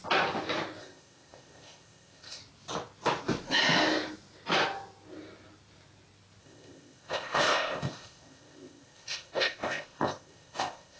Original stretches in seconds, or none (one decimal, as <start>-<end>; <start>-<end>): 0.0-0.8; 2.4-6.4